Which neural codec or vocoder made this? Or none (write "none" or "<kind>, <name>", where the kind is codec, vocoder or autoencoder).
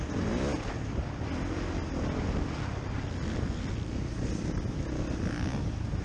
none